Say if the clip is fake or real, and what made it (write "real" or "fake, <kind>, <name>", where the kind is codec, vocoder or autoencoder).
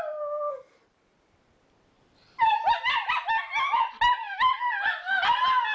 real